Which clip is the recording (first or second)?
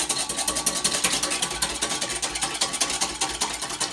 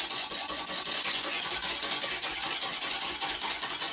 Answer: first